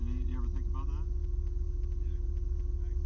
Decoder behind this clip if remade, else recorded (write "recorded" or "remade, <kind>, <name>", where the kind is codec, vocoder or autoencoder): recorded